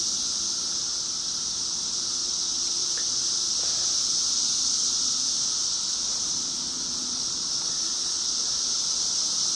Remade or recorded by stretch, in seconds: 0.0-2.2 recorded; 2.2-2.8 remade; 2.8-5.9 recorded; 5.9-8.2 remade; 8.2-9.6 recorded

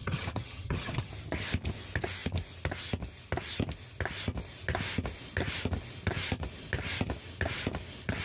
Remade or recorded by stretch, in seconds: 0.0-1.1 remade; 1.1-8.2 recorded

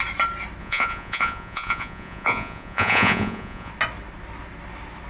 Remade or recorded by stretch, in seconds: 0.0-0.6 recorded; 0.6-3.7 remade; 3.7-5.1 recorded